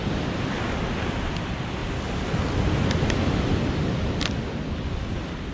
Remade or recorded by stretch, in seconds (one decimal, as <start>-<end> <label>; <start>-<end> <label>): 0.0-5.5 recorded